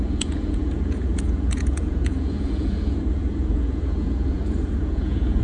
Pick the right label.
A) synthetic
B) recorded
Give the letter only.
A